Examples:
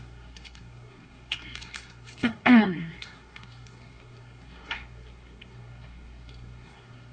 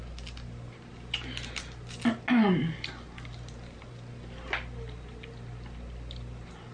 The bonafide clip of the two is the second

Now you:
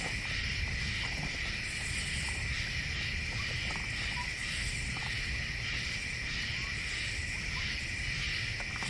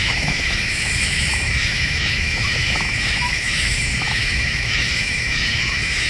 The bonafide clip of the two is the first